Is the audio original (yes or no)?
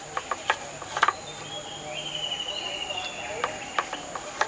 yes